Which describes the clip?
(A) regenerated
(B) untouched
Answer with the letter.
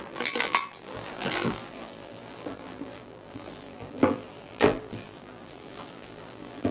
A